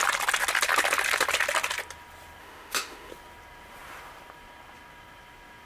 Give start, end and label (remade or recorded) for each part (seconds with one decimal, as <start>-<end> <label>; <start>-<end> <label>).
0.0-2.4 recorded; 2.4-3.1 remade; 3.1-5.7 recorded